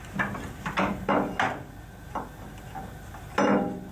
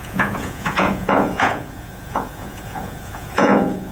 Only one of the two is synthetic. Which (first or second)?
second